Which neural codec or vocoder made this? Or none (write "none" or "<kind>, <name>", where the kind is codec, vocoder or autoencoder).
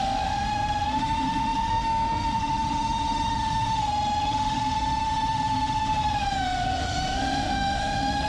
autoencoder, DAC-VAE